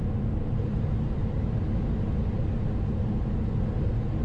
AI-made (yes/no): no